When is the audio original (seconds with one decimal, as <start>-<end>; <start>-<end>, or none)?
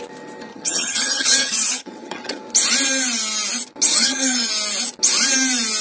0.0-0.5; 2.4-3.9; 4.5-5.8